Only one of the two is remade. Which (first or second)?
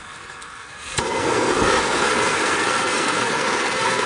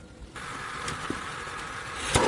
first